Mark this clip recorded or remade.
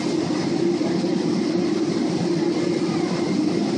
recorded